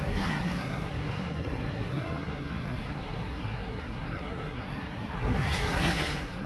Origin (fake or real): fake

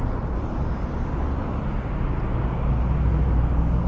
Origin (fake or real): real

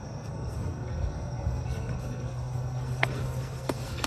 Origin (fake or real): fake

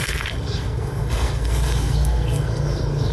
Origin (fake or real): fake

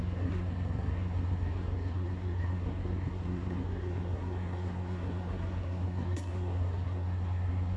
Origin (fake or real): fake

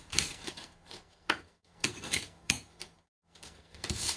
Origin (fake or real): fake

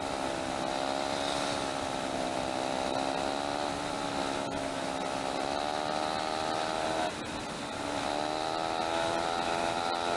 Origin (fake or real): real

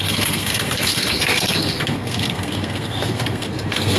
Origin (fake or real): fake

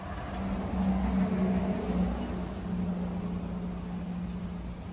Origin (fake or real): real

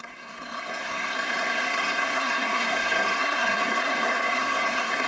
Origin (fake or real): fake